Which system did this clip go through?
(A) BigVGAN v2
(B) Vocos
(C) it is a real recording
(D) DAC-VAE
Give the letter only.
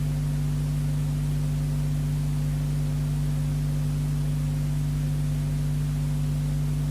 C